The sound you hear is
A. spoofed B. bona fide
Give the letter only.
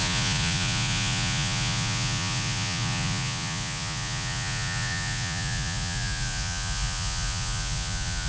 A